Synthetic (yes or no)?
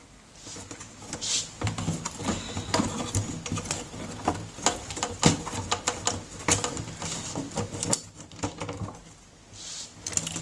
no